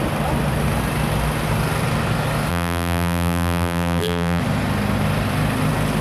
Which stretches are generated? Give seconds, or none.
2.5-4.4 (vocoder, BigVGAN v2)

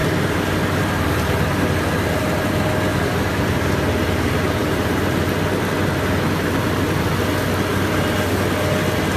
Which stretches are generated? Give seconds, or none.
2.9-3.7 (vocoder, BigVGAN v2); 4.6-5.3

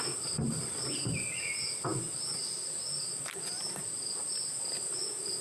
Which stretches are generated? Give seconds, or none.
none

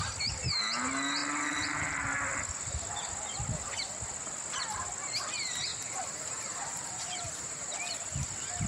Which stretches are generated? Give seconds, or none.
5.7-7.9 (vocoder, BigVGAN v2)

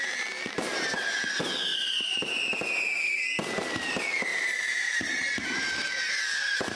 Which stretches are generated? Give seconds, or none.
1.7-3.2 (vocoder, BigVGAN v2); 4.3-6.2

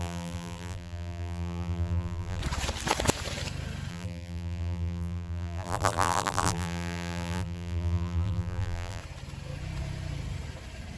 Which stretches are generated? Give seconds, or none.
0.0-2.4 (vocoder, BigVGAN v2); 3.9-9.0

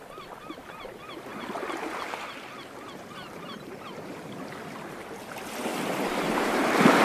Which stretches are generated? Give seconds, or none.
none

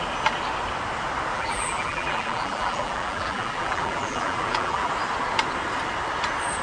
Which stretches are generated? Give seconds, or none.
1.3-4.9 (vocoder, BigVGAN v2)